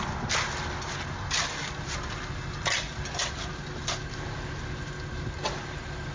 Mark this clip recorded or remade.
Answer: recorded